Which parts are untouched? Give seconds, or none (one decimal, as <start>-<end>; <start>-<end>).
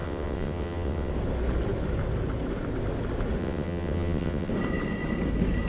1.1-3.4; 4.5-5.7